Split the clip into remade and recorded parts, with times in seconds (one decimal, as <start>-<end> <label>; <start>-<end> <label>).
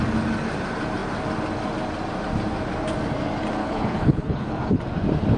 0.0-3.6 recorded; 3.6-4.8 remade; 4.8-5.4 recorded